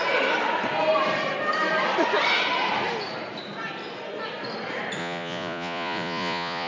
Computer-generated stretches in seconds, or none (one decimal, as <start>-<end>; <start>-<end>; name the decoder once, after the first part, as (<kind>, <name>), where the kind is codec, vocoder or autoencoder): 5.0-6.7 (vocoder, Vocos)